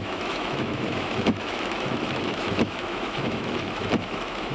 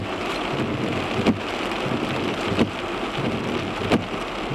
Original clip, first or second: second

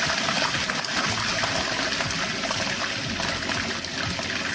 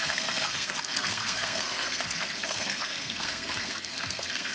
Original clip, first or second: first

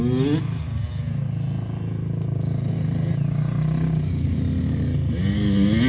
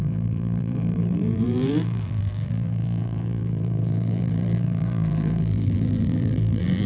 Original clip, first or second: first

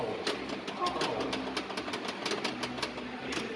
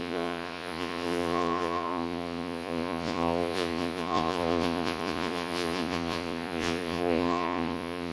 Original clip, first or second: first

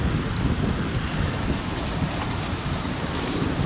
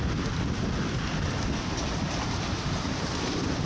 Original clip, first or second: first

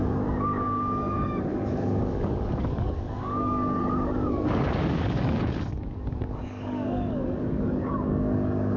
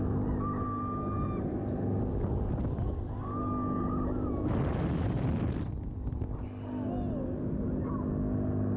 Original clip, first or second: second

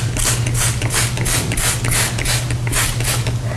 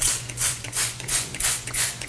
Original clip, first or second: first